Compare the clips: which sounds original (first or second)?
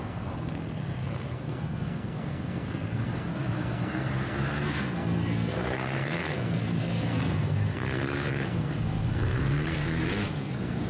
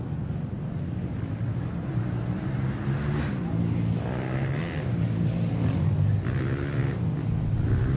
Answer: second